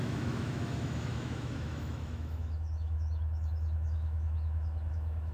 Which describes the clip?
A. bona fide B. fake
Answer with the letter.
B